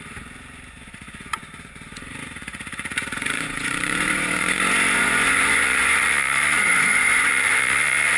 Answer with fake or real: fake